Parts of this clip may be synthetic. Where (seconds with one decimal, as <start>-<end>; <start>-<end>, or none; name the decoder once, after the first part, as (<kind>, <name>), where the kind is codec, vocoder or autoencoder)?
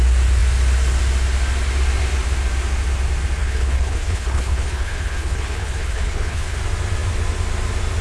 3.4-6.6 (codec, HILCodec)